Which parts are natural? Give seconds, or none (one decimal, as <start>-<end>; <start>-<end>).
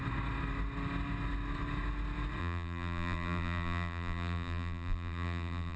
0.0-2.4